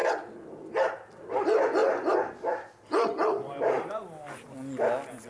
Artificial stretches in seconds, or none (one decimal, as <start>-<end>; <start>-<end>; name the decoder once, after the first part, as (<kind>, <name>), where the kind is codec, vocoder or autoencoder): 0.0-1.3 (vocoder, BigVGAN v2); 3.0-3.9